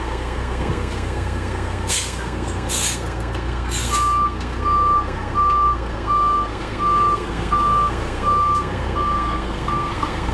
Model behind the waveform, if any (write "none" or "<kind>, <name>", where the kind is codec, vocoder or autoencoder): codec, SNAC